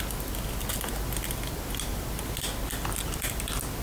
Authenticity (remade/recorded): recorded